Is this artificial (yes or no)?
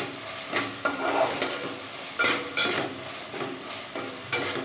no